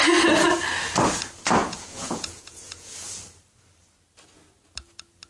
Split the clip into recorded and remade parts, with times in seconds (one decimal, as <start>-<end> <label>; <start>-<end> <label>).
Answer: 0.0-1.6 recorded; 1.6-3.2 remade; 3.2-5.3 recorded